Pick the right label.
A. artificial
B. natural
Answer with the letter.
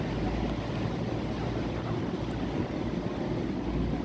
B